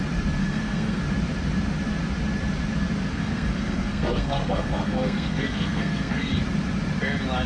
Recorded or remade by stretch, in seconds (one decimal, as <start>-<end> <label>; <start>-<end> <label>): 0.0-0.4 recorded; 0.4-1.0 remade; 1.0-3.1 recorded; 3.1-6.3 remade; 6.3-7.5 recorded